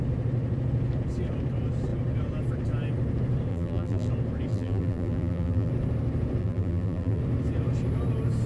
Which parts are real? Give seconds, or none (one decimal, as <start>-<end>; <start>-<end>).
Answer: 0.0-3.5; 4.1-4.5; 5.7-6.4; 7.2-8.5